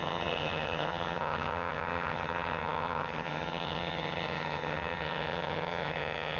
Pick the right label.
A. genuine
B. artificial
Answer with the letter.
B